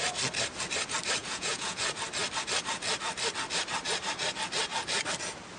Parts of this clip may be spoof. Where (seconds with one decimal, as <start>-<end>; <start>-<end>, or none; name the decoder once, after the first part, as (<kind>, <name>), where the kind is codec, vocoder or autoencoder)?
1.2-1.8 (vocoder, Vocos)